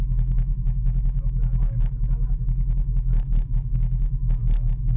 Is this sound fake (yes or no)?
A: yes